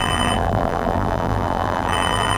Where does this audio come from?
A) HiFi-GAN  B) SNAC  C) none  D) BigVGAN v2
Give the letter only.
D